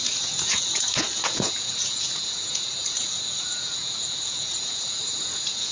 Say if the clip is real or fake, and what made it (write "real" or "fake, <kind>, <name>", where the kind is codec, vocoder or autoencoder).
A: fake, vocoder, Vocos